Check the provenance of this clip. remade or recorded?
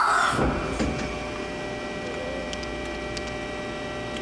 recorded